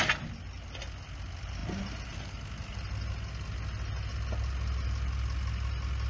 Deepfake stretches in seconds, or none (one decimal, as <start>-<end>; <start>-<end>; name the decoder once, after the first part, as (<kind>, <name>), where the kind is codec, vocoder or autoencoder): none